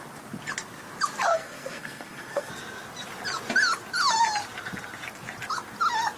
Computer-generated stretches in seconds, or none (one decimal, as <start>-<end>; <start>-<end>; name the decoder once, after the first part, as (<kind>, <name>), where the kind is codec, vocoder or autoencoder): 1.3-2.5 (codec, SNAC)